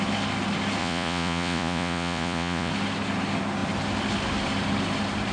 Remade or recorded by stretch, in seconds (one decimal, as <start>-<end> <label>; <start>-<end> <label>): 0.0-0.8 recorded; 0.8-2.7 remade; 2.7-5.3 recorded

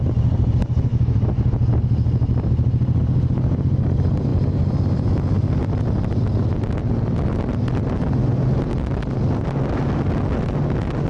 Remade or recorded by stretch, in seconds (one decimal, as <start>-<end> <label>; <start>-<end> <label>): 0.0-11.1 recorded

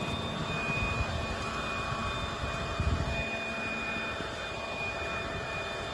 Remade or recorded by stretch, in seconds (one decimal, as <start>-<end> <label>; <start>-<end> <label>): 0.0-5.9 recorded

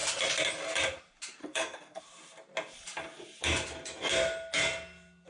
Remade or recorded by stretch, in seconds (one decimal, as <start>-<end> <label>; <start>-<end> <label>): 0.0-1.4 recorded; 1.4-2.0 remade; 2.0-5.3 recorded

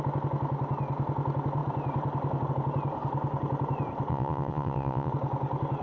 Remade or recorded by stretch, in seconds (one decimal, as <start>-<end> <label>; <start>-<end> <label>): 0.0-4.1 recorded; 4.1-5.1 remade; 5.1-5.8 recorded

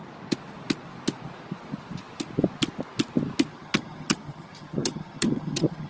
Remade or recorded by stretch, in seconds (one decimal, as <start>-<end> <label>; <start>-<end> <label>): 0.0-3.5 recorded; 3.5-5.9 remade